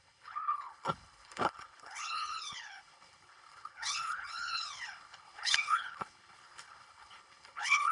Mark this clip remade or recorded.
remade